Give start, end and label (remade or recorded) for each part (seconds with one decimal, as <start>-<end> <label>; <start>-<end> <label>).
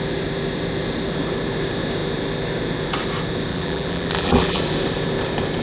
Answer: 0.0-3.5 recorded; 3.5-4.6 remade; 4.6-5.6 recorded